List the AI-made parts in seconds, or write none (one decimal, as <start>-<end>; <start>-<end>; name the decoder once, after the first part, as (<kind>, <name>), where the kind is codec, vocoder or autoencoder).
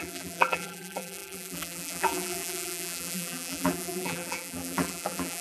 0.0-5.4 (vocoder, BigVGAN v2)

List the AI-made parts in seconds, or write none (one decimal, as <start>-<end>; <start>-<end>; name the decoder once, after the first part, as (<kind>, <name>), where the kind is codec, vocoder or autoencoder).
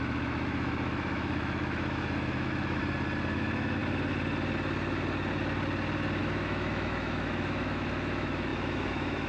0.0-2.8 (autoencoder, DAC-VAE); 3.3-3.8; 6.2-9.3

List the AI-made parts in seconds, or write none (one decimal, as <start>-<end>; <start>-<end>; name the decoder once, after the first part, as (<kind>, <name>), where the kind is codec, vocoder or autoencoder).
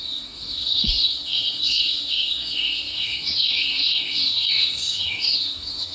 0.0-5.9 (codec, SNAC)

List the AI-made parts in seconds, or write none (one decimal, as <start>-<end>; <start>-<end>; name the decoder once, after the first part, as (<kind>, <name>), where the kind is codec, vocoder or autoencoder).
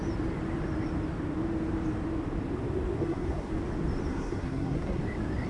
3.0-3.5 (codec, SNAC); 4.1-5.0